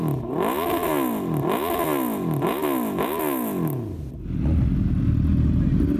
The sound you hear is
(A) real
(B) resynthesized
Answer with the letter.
A